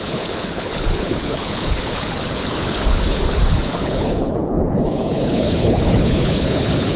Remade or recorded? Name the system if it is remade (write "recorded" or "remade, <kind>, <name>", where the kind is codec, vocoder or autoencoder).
remade, codec, HILCodec